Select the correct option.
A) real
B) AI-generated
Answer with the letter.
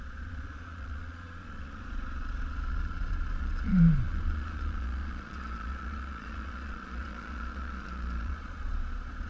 B